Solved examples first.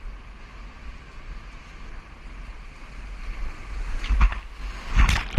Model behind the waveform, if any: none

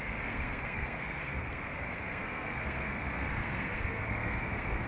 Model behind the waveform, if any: codec, SNAC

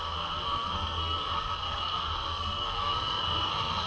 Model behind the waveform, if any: codec, SNAC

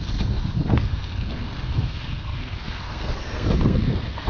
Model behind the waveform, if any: codec, SNAC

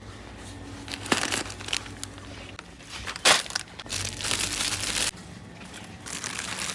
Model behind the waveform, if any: none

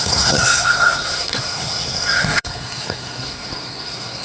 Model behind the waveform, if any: codec, SNAC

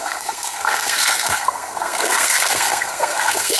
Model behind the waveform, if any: codec, SNAC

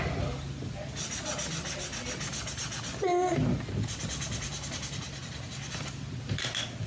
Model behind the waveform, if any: none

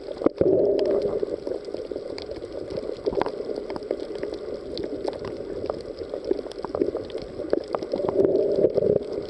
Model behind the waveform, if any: none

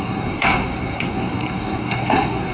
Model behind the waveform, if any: codec, SNAC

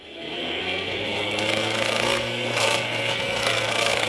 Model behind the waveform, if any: codec, SNAC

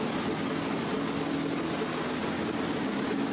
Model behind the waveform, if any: none